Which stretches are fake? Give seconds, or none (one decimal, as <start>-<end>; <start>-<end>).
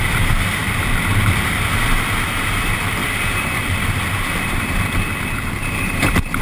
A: 0.0-6.4